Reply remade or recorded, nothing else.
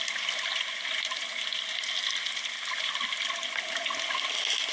recorded